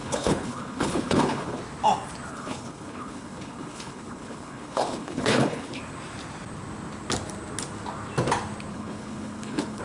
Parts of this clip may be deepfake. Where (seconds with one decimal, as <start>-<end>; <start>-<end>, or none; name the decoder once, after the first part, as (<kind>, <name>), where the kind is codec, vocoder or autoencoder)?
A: 0.0-1.6 (codec, HILCodec); 2.3-5.8; 8.7-9.8